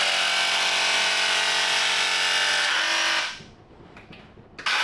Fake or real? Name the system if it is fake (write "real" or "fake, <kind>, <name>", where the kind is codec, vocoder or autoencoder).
real